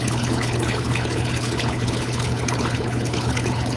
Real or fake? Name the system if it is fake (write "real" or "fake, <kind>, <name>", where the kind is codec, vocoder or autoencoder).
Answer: fake, codec, HILCodec